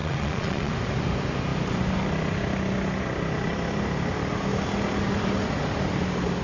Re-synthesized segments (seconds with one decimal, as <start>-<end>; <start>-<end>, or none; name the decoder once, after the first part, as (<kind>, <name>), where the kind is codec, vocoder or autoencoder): 0.0-0.7 (vocoder, Vocos)